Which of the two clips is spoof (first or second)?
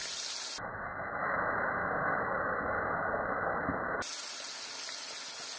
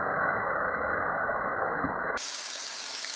second